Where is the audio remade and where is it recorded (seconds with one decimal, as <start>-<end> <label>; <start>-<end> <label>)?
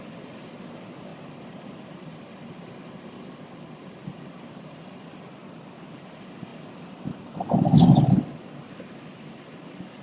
0.0-10.0 recorded